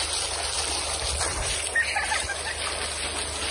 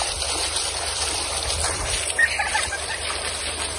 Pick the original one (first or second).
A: first